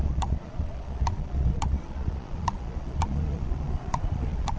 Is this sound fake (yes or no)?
yes